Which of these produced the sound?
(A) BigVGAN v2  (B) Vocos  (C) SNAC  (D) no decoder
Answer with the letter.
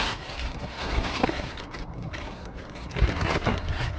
C